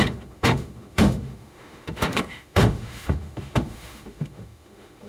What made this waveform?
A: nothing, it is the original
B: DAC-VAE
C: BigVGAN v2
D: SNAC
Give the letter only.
B